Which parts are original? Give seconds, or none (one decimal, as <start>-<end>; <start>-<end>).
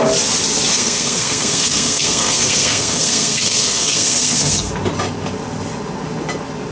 0.0-0.7; 4.7-6.7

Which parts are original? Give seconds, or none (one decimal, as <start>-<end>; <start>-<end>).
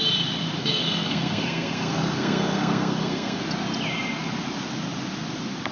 0.0-0.6; 3.4-5.7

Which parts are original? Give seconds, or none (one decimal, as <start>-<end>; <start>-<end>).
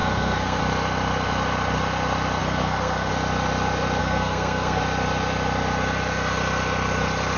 0.6-2.4; 3.1-4.0; 4.8-7.4